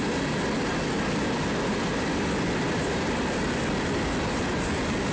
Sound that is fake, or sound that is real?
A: real